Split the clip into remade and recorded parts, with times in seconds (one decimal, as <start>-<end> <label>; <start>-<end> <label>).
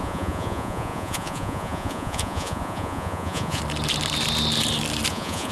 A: 0.0-3.6 remade; 3.6-5.1 recorded; 5.1-5.5 remade